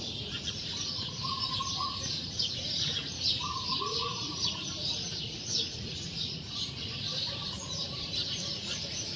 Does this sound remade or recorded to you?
remade